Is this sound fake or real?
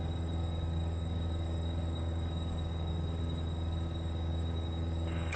fake